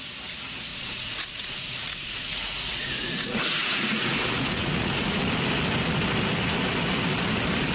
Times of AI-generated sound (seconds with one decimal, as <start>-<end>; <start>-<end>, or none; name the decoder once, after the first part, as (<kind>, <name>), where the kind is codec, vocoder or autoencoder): 0.7-5.3 (vocoder, Vocos)

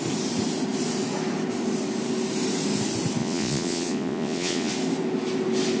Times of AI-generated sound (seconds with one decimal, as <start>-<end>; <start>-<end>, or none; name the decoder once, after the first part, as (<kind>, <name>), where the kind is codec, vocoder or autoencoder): 3.2-4.7 (vocoder, Vocos)

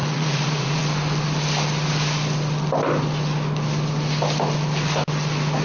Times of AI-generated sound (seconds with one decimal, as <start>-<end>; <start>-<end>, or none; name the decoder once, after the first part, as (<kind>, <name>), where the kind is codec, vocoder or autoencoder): 0.0-0.8 (vocoder, Vocos)

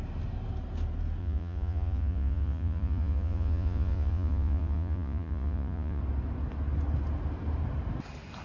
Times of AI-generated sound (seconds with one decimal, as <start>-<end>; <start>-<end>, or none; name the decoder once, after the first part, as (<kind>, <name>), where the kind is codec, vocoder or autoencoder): 1.2-6.0 (vocoder, Vocos)